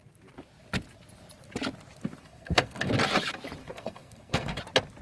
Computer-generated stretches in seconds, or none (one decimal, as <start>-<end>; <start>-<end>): 2.2-2.9; 3.6-4.6